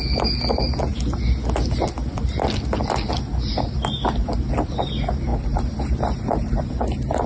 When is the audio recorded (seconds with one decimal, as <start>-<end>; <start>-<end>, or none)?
0.0-7.3